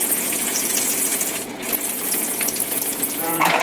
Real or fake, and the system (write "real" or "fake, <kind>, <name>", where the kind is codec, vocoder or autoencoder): fake, vocoder, Vocos